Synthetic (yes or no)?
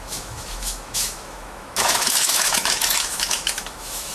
yes